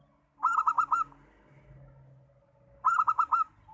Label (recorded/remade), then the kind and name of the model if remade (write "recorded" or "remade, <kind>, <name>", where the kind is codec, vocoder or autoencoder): recorded